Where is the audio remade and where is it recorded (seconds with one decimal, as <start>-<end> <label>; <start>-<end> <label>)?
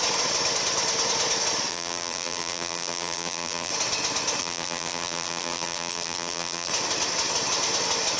0.0-1.7 recorded; 1.7-3.7 remade; 3.7-4.4 recorded; 4.4-6.7 remade; 6.7-8.2 recorded